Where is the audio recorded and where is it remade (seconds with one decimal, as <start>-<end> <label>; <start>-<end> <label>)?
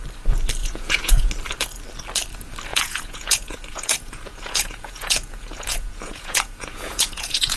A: 0.0-0.6 recorded; 0.6-1.3 remade; 1.3-2.7 recorded; 2.7-7.6 remade